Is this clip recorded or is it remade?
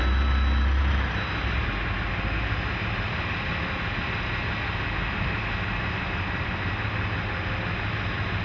recorded